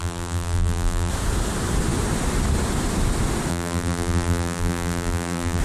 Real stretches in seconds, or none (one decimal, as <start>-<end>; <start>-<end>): 1.1-3.5